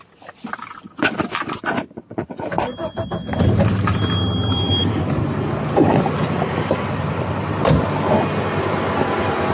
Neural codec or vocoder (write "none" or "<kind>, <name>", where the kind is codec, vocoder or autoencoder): none